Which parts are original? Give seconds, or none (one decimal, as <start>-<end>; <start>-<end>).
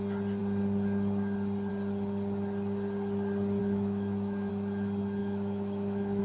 0.0-3.6; 4.5-5.2